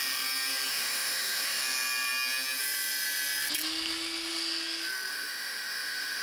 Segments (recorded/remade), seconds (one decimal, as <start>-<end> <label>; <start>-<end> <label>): 0.0-0.7 recorded; 0.7-1.6 remade; 1.6-5.1 recorded; 5.1-6.2 remade